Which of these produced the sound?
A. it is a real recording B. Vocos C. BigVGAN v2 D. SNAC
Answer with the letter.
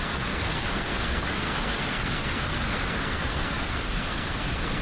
D